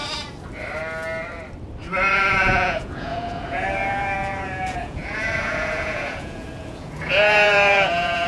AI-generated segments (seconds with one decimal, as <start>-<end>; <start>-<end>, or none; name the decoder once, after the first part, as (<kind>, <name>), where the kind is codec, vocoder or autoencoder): 2.1-8.3 (vocoder, Vocos)